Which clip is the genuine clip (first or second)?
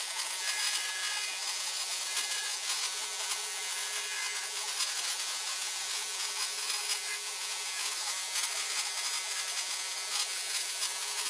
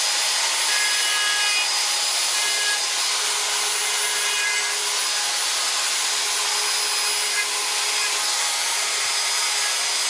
second